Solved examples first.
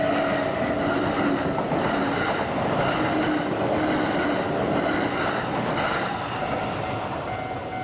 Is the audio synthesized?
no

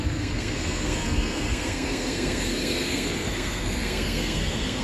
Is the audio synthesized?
yes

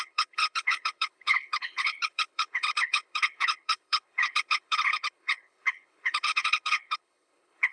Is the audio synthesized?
yes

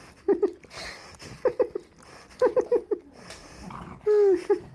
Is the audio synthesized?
no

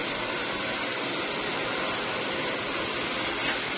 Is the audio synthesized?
no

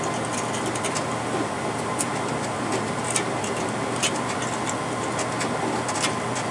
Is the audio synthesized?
no